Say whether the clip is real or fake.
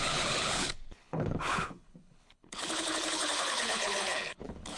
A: fake